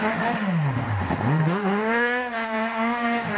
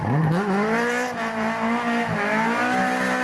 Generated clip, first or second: first